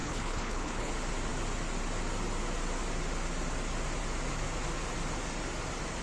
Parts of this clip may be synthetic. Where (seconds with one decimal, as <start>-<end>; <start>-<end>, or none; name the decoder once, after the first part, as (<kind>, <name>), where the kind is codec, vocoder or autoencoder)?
0.0-0.9 (codec, HILCodec)